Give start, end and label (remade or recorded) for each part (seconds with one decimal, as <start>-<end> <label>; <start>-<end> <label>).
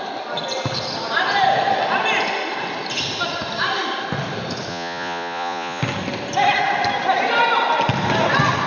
0.0-4.7 recorded; 4.7-5.8 remade; 5.8-8.7 recorded